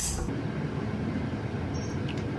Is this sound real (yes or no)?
yes